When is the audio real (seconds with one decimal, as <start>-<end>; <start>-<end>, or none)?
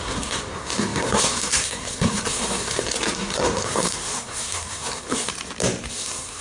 5.3-5.9